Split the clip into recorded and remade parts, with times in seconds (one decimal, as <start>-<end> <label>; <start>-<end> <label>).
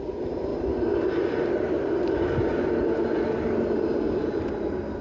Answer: 0.0-5.0 recorded